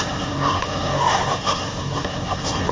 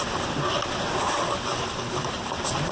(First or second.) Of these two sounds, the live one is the second